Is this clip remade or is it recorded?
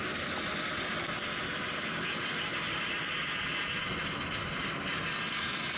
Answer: recorded